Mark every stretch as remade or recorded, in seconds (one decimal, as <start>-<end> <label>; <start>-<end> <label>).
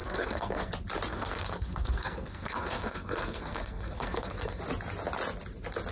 0.0-0.7 remade; 0.7-1.1 recorded; 1.1-4.6 remade; 4.6-5.9 recorded